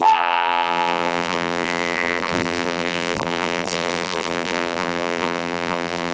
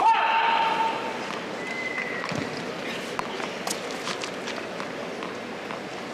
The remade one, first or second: first